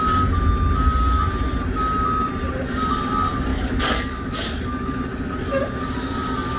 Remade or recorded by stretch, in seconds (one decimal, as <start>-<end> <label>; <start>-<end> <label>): 0.0-3.5 recorded; 3.5-5.0 remade; 5.0-6.6 recorded